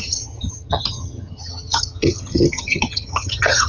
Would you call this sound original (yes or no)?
no